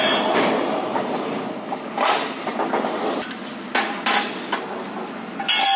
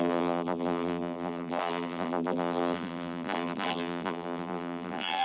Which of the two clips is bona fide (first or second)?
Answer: first